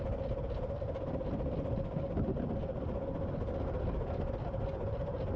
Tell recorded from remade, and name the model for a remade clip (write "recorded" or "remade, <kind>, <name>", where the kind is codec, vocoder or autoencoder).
recorded